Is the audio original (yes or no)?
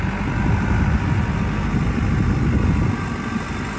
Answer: yes